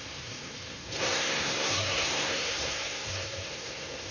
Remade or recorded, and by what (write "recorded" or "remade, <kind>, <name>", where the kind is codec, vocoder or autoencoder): remade, codec, SNAC